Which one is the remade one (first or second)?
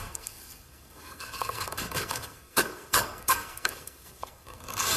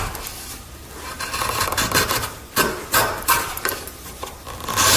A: first